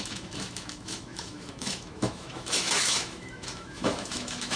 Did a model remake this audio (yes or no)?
yes